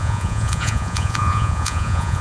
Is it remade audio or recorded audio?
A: remade